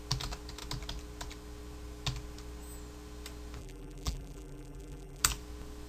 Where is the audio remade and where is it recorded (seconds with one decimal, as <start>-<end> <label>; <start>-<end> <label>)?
0.0-3.6 recorded; 3.6-5.2 remade; 5.2-5.9 recorded